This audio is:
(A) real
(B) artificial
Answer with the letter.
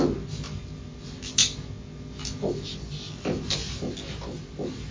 A